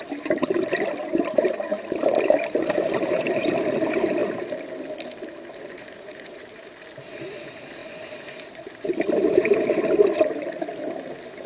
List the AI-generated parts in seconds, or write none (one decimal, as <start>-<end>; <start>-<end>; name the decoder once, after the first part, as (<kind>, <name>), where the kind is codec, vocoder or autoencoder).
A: 0.0-4.2 (vocoder, BigVGAN v2); 5.6-11.5

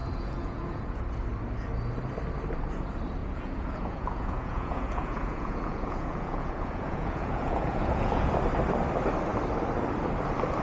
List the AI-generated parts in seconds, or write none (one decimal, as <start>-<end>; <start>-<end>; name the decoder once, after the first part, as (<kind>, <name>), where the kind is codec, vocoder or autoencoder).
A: 0.0-1.0 (vocoder, Vocos); 3.2-8.3

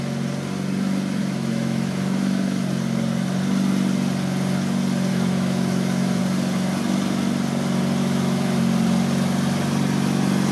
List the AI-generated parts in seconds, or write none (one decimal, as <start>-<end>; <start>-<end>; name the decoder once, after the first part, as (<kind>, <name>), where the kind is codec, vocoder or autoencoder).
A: 1.2-2.6 (autoencoder, DAC-VAE); 5.1-6.2; 8.0-8.6

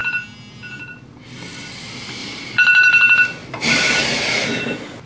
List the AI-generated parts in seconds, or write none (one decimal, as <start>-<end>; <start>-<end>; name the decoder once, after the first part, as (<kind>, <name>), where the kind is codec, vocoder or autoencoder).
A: 2.2-2.9 (vocoder, BigVGAN v2); 3.4-4.2

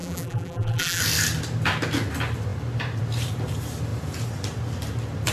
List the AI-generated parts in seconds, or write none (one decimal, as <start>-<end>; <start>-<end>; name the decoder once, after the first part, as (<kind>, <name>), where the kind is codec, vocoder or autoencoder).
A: 0.0-1.0 (vocoder, BigVGAN v2)

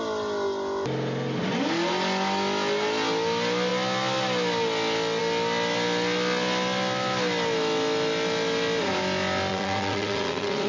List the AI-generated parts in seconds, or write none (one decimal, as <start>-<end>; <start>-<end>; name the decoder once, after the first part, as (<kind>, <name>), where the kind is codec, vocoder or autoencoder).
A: 9.5-10.7 (vocoder, WaveNeXt)

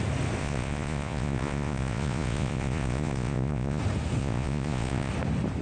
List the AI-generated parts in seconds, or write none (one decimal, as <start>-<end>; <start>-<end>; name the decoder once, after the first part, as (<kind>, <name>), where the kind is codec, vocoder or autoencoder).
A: 0.4-3.8 (vocoder, Vocos); 4.2-5.1

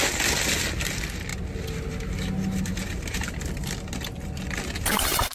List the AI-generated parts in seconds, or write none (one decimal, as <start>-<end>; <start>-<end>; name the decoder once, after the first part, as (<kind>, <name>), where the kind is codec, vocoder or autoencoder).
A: none